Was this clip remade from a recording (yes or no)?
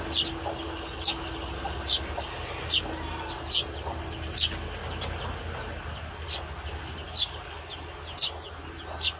no